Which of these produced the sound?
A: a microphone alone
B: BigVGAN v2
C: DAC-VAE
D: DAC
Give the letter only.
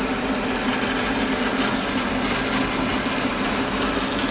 A